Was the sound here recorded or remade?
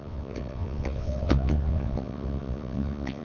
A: remade